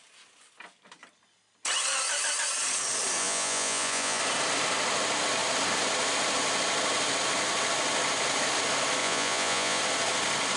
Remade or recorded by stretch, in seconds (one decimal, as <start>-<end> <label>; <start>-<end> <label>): 0.0-3.2 recorded; 3.2-4.2 remade; 4.2-9.0 recorded; 9.0-9.8 remade; 9.8-10.6 recorded